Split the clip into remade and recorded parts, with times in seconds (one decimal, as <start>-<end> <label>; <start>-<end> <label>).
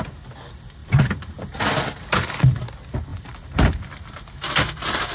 0.0-0.8 recorded; 0.8-1.6 remade; 1.6-3.1 recorded; 3.1-4.2 remade; 4.2-5.1 recorded